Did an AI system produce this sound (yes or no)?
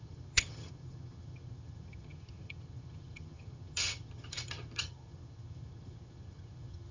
yes